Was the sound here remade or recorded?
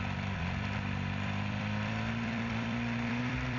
remade